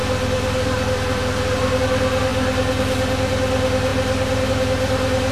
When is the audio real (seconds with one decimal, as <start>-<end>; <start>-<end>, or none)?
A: 0.0-5.3